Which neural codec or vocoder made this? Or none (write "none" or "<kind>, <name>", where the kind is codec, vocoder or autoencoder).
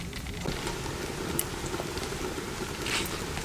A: none